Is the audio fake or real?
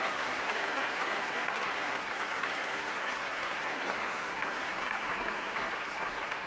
fake